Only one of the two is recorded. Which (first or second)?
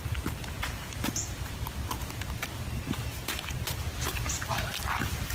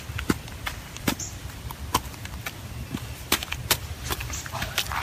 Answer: first